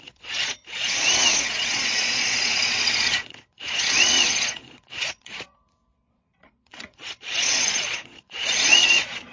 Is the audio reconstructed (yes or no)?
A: yes